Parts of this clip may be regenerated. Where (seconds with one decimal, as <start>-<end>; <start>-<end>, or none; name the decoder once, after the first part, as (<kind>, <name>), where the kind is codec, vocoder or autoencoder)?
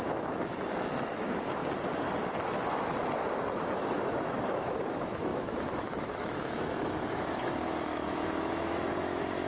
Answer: 0.0-1.6 (autoencoder, DAC-VAE); 3.6-9.5